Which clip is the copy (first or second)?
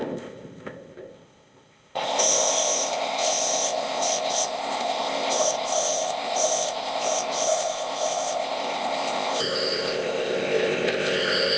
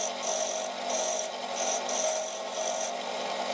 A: first